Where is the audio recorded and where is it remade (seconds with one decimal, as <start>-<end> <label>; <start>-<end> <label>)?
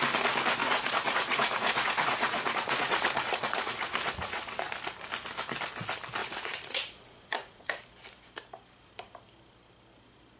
0.0-0.6 recorded; 0.6-4.7 remade; 4.7-6.2 recorded; 6.2-7.8 remade; 7.8-10.4 recorded